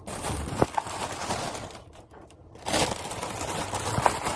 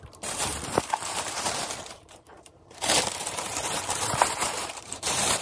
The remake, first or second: second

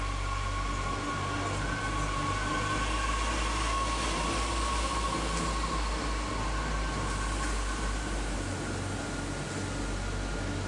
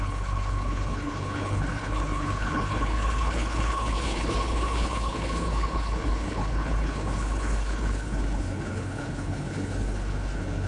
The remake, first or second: second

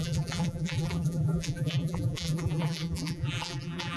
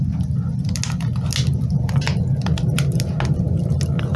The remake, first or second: first